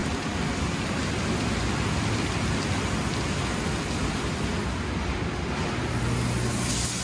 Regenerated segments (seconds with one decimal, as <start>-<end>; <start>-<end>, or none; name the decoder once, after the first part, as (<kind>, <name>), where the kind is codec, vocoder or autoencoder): none